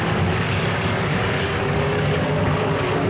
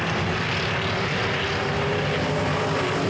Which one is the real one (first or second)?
second